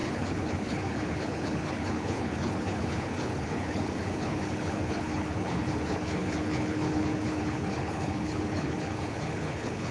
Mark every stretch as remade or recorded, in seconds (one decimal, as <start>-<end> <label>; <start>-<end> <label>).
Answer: 0.0-9.9 remade